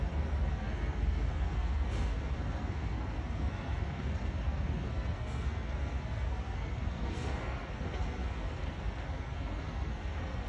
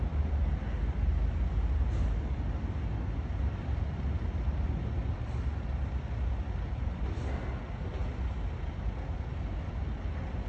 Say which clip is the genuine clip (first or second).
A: second